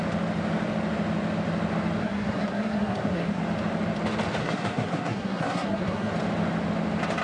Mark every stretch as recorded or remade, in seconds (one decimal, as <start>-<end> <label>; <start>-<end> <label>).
0.0-2.0 recorded; 2.0-3.4 remade; 3.4-4.4 recorded; 4.4-6.1 remade; 6.1-7.2 recorded